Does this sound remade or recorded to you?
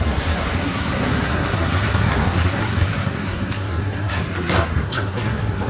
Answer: remade